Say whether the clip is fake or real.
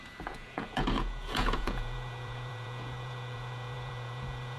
fake